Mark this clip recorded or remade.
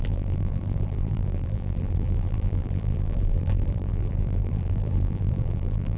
remade